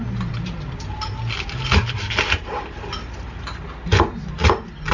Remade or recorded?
recorded